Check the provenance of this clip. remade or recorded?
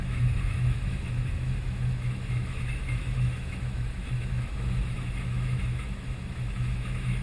remade